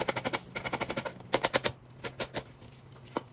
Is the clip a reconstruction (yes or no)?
no